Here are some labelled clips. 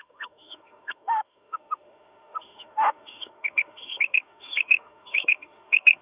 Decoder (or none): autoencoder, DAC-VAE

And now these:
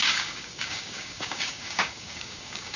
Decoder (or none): codec, DAC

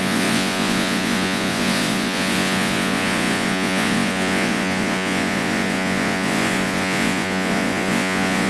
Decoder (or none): vocoder, Vocos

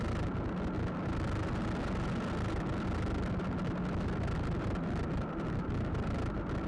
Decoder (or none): none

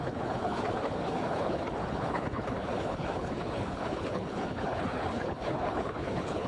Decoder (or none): codec, HILCodec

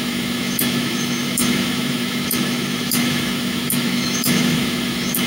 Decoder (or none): autoencoder, DAC-VAE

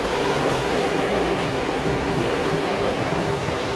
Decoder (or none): codec, SNAC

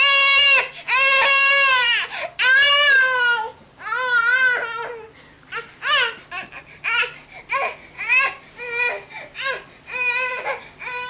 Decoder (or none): none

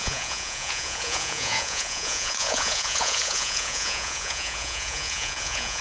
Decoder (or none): vocoder, Vocos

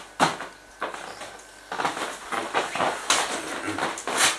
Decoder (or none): none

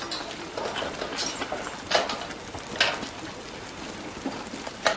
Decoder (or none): none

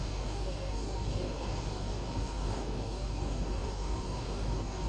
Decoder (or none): codec, DAC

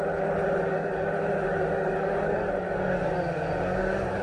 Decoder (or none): codec, DAC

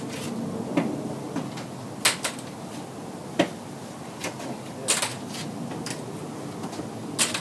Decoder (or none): none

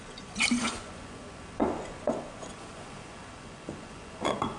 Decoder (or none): vocoder, Vocos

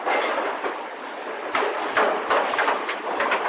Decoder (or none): none